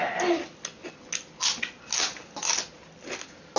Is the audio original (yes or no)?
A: yes